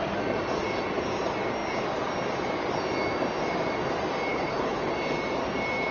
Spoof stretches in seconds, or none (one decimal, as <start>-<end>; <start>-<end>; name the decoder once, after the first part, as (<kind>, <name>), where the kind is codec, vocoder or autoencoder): 4.3-4.9 (codec, HILCodec)